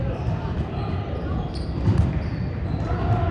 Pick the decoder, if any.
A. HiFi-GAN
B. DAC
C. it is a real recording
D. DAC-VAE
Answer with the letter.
C